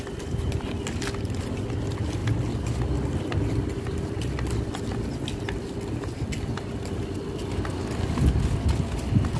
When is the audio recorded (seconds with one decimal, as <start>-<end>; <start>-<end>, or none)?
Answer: 0.0-9.4